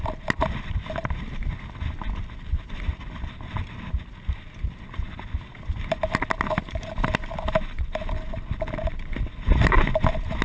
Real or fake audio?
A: real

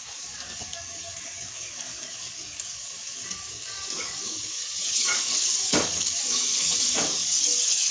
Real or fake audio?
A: fake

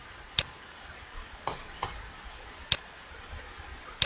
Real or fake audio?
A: real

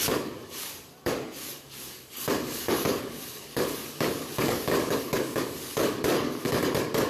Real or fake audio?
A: fake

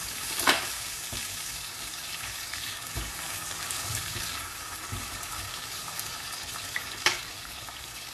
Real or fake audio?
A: fake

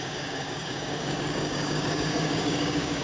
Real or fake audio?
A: fake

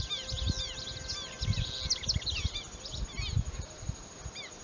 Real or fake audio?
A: real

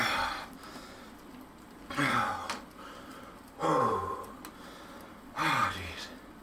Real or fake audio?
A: real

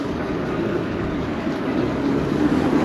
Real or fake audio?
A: fake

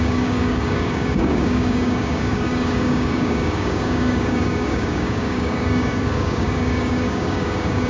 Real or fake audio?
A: fake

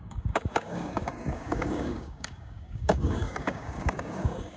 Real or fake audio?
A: fake